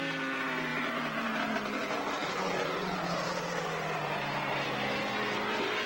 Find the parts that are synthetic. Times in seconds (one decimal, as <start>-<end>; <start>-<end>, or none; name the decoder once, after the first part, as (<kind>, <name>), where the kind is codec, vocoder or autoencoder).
none